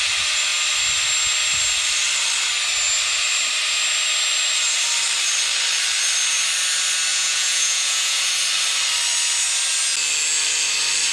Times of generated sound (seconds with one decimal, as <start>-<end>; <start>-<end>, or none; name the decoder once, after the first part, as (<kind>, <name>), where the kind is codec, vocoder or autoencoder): 7.1-8.3 (vocoder, Vocos)

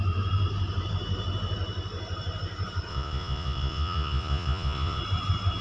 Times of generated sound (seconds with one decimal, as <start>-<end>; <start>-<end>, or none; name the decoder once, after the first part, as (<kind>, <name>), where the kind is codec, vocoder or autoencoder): 2.9-5.0 (vocoder, Vocos)

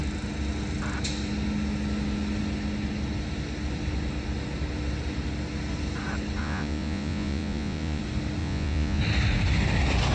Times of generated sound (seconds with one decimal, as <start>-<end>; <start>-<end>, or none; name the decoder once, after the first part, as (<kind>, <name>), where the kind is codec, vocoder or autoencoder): 6.4-8.0 (vocoder, Vocos); 8.4-9.0

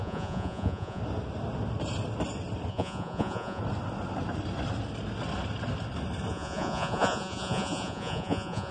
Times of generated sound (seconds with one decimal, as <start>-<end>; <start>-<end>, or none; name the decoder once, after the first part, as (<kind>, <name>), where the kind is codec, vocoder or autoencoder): 0.0-1.0 (vocoder, Vocos); 2.7-3.6; 6.3-8.7